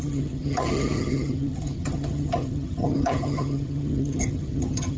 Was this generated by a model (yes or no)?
yes